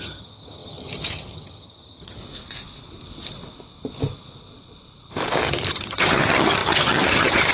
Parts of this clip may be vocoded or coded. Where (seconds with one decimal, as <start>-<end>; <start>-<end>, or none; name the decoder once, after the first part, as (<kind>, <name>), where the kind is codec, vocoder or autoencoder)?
0.0-2.2 (vocoder, HiFi-GAN); 5.7-7.5